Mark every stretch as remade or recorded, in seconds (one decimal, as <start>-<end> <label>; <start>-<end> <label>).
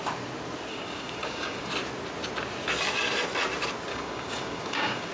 0.0-0.7 recorded; 0.7-1.7 remade; 1.7-3.9 recorded; 3.9-5.1 remade